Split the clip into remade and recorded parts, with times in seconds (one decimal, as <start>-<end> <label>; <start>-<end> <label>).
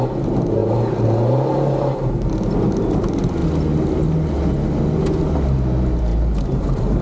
0.0-0.6 recorded; 0.6-2.3 remade; 2.3-6.1 recorded; 6.1-7.0 remade